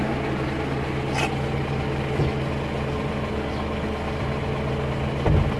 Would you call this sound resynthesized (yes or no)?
no